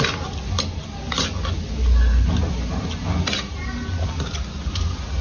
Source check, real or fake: real